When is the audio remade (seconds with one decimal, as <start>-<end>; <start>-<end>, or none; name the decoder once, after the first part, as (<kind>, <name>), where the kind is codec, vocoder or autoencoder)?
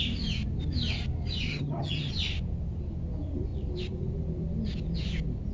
1.5-2.1 (vocoder, HiFi-GAN)